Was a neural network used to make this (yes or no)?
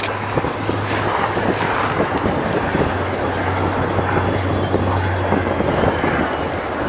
no